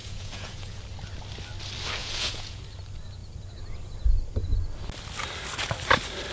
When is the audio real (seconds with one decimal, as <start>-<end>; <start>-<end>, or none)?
0.8-2.0; 2.6-6.3